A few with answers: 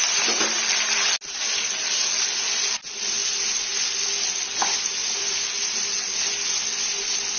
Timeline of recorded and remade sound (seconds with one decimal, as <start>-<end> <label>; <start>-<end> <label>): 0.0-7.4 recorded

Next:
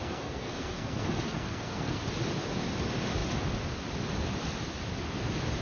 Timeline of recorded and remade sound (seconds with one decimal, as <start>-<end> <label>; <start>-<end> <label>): 0.0-2.0 remade; 2.0-5.6 recorded

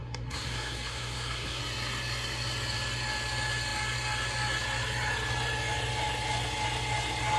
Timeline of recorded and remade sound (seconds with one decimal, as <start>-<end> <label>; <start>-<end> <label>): 0.0-1.6 remade; 1.6-7.4 recorded

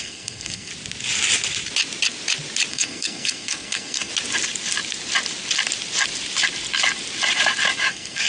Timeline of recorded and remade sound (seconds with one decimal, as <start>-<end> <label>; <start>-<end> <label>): 0.0-0.7 remade; 0.7-2.7 recorded; 2.7-4.1 remade; 4.1-7.9 recorded; 7.9-8.3 remade

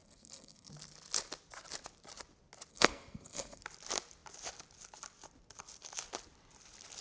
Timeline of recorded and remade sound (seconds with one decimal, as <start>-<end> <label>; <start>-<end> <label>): 0.0-0.7 remade; 0.7-2.7 recorded; 2.7-3.6 remade; 3.6-7.0 recorded

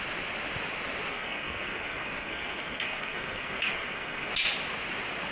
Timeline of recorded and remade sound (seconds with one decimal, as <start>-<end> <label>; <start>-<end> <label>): 0.0-1.1 recorded; 1.1-4.3 remade; 4.3-5.3 recorded